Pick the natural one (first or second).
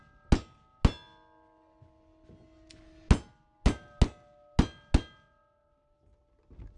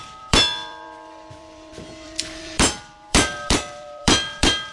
first